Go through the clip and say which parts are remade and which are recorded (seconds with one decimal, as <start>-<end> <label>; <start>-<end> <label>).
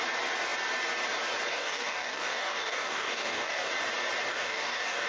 0.0-1.5 recorded; 1.5-3.7 remade; 3.7-4.3 recorded; 4.3-5.1 remade